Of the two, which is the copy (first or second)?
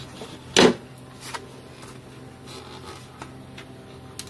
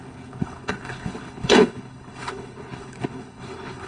second